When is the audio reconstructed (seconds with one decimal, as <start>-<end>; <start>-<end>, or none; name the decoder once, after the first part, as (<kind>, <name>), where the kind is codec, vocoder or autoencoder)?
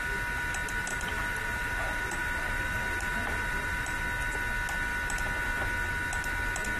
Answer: 0.9-4.0 (vocoder, BigVGAN v2)